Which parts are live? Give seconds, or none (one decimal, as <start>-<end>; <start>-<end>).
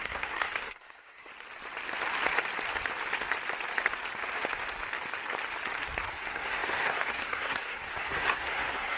1.3-6.0